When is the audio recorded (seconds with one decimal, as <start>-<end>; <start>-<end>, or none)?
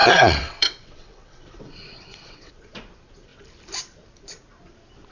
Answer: 2.5-5.1